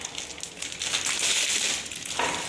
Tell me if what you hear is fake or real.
real